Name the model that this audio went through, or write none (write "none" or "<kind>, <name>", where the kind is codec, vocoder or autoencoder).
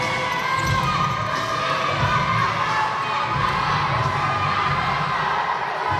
none